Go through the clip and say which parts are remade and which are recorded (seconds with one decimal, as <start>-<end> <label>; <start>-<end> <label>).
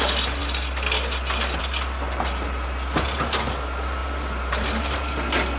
0.0-5.6 recorded